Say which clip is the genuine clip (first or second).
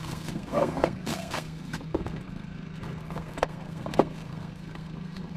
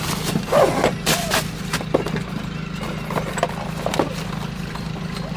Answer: second